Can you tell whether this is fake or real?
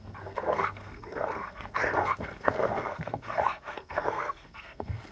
fake